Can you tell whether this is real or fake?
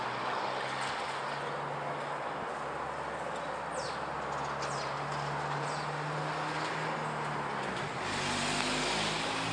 real